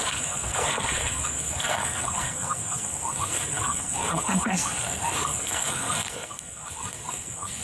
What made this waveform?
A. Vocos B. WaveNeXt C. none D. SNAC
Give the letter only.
D